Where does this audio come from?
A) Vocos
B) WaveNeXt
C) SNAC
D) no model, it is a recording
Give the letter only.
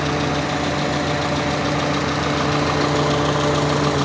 D